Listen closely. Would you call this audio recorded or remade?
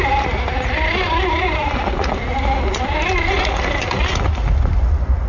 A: recorded